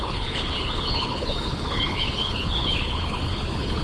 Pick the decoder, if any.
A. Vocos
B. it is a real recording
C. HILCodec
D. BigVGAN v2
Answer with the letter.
C